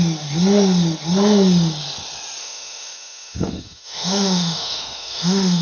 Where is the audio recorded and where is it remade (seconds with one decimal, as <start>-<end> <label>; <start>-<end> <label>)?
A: 0.0-2.4 recorded; 2.4-5.6 remade